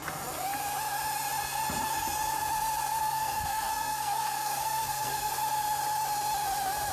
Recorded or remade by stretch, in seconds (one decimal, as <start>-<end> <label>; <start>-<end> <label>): 0.0-3.0 recorded; 3.0-5.3 remade; 5.3-6.9 recorded